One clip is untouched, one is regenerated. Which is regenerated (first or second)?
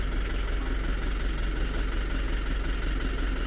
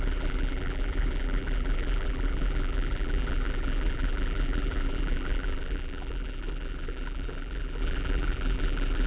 second